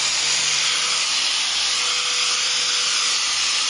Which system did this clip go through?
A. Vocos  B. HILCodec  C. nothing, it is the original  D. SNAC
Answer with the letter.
C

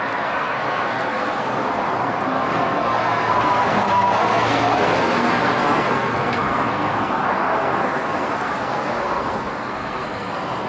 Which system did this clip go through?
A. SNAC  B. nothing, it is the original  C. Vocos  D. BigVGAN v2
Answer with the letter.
A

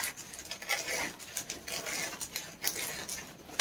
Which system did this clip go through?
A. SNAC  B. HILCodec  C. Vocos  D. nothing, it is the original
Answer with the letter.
D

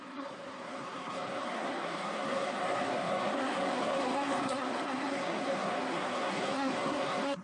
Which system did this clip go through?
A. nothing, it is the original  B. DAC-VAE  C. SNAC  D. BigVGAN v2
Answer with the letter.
C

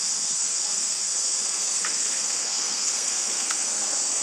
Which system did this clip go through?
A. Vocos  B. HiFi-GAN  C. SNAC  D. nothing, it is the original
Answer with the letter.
C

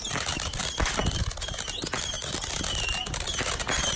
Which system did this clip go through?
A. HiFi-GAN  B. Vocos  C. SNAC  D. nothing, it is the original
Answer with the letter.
D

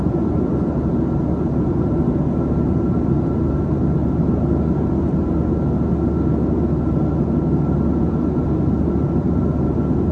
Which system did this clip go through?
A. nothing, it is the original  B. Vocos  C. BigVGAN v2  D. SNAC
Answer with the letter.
A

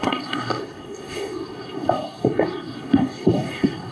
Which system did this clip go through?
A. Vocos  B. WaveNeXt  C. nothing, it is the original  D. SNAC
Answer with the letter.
D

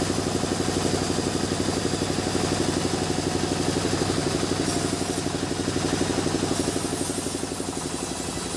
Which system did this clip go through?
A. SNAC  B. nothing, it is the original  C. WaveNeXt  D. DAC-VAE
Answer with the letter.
B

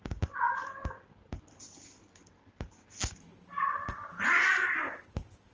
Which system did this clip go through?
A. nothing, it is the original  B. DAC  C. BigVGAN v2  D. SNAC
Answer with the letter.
A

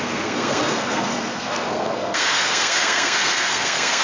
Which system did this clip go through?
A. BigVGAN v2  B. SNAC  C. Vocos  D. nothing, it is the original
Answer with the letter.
B